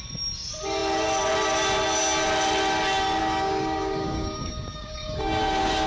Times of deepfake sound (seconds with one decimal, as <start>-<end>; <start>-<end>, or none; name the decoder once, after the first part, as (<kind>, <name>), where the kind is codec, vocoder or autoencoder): 3.2-5.9 (codec, DAC)